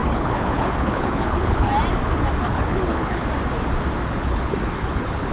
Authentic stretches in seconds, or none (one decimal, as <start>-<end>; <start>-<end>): 1.7-2.4; 3.2-4.2